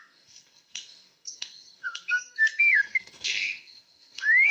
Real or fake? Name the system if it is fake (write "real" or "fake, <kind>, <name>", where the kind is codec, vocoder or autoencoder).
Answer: fake, codec, SNAC